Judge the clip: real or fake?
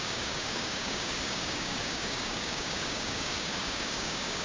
fake